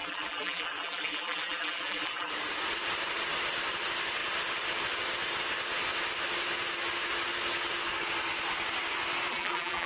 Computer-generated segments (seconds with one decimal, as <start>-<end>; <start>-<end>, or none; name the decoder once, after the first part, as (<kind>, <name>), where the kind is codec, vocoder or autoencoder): 0.0-2.3 (vocoder, BigVGAN v2); 9.3-9.9